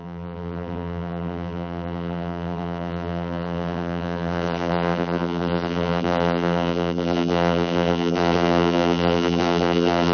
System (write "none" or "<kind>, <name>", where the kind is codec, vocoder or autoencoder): vocoder, BigVGAN v2